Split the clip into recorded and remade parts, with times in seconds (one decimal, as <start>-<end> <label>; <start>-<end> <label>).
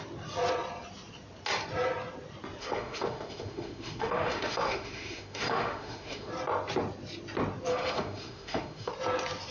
0.0-2.6 recorded; 2.6-6.3 remade; 6.3-7.7 recorded; 7.7-8.9 remade; 8.9-9.5 recorded